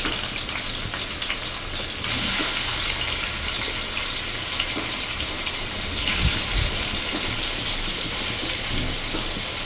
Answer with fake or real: real